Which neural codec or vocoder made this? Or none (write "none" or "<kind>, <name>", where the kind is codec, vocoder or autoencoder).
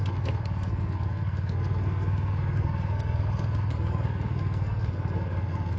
codec, SNAC